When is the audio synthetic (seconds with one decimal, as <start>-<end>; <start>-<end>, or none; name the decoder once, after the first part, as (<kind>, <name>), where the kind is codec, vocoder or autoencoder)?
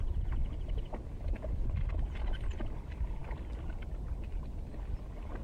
none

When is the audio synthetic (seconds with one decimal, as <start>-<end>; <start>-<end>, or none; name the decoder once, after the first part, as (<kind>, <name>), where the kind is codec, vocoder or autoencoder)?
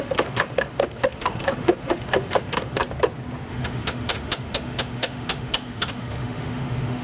0.0-2.8 (autoencoder, DAC-VAE); 3.5-7.0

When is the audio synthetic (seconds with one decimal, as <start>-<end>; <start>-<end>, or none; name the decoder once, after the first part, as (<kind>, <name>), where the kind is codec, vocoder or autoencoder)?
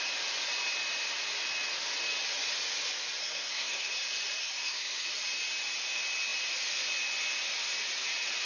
3.2-3.9 (codec, SNAC); 4.4-5.1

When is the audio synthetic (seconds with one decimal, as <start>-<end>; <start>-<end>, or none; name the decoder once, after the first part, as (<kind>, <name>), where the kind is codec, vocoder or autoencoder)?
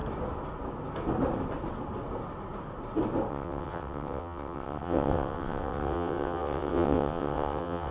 3.3-7.9 (vocoder, WaveNeXt)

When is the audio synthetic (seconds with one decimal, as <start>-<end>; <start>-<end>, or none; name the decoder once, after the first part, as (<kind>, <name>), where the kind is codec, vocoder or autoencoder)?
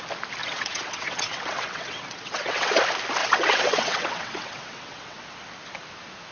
0.4-2.8 (vocoder, WaveNeXt); 3.2-5.2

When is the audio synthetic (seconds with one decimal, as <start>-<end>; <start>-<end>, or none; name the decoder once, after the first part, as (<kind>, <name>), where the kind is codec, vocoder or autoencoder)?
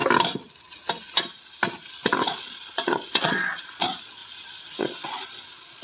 1.9-4.2 (vocoder, Vocos); 4.8-5.8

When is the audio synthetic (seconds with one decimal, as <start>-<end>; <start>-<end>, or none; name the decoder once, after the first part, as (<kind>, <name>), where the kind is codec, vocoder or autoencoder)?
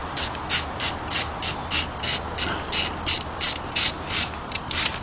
none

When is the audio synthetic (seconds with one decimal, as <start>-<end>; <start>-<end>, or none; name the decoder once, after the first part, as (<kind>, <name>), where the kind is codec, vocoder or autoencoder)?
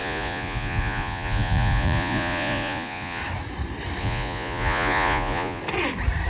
0.0-3.2 (vocoder, Vocos); 4.0-5.6